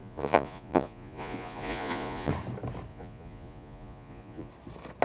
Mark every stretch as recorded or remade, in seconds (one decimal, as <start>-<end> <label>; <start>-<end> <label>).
0.0-2.3 remade; 2.3-2.9 recorded; 2.9-4.5 remade; 4.5-5.0 recorded